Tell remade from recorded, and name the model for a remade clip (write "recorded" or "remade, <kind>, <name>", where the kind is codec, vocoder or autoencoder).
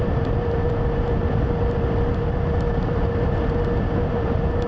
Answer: recorded